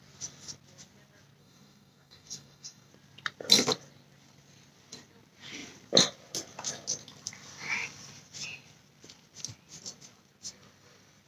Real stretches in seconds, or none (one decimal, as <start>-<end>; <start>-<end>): 0.0-1.4; 2.9-11.3